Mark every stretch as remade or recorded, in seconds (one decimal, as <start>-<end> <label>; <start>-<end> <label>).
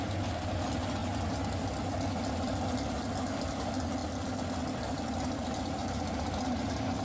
0.0-1.0 remade; 1.0-2.7 recorded; 2.7-4.0 remade; 4.0-4.9 recorded; 4.9-7.0 remade